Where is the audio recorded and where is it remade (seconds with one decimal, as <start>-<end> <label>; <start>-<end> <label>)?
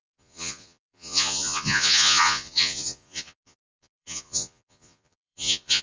0.0-5.8 remade